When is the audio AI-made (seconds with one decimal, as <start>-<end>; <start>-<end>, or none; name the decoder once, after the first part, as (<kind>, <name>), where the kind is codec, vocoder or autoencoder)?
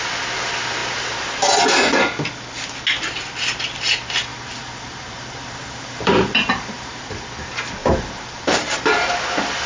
4.3-7.0 (vocoder, BigVGAN v2); 7.8-9.1